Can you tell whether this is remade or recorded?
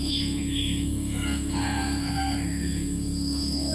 remade